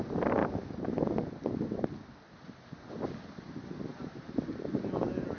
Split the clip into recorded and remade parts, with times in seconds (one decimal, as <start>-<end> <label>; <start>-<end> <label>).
0.0-5.4 recorded